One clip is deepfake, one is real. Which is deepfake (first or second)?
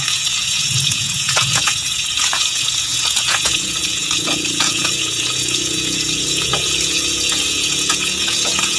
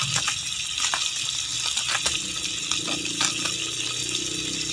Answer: first